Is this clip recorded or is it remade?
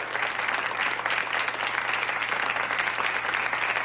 recorded